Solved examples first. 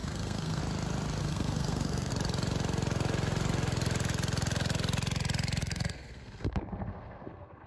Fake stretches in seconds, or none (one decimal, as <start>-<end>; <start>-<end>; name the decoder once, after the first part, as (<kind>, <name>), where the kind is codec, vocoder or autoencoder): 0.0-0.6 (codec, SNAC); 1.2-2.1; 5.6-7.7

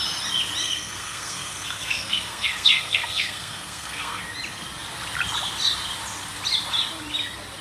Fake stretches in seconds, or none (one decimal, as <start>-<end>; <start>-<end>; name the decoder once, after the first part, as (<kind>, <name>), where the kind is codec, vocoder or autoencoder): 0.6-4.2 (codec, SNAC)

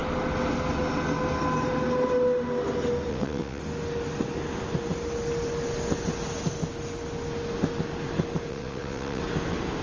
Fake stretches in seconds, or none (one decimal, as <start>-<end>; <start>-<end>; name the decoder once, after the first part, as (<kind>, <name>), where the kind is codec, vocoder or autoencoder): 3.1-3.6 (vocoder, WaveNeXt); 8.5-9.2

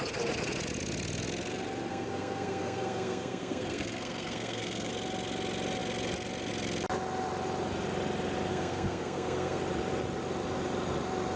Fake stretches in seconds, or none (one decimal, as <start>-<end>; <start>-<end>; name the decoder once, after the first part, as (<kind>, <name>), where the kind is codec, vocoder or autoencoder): 1.9-4.9 (codec, SNAC); 8.5-9.6

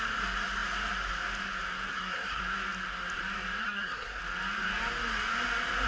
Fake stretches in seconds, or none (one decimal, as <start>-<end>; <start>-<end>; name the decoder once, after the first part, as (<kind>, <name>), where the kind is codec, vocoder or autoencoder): 1.9-2.4 (codec, SNAC); 3.6-4.2